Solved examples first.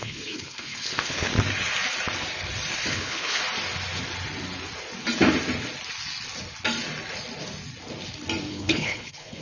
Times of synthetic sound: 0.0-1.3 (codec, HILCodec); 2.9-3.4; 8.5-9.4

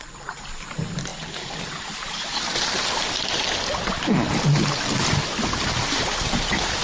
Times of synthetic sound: none

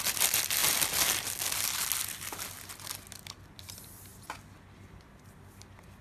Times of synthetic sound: none

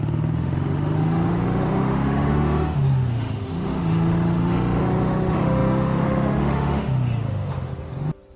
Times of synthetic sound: 0.0-7.7 (autoencoder, DAC-VAE)

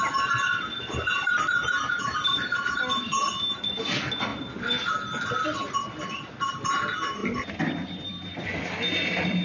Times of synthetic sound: none

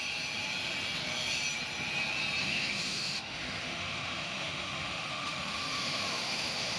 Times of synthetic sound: 2.4-6.8 (autoencoder, DAC-VAE)

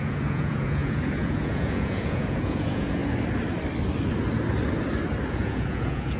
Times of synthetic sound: 0.0-3.0 (vocoder, Vocos); 5.3-6.2

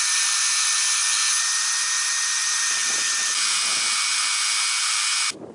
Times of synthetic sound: none